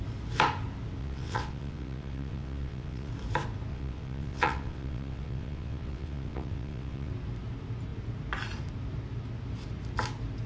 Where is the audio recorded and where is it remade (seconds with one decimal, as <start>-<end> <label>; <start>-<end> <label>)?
0.0-1.0 recorded; 1.0-3.1 remade; 3.1-3.7 recorded; 3.7-7.1 remade; 7.1-10.5 recorded